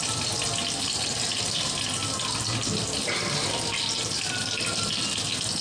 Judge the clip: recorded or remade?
recorded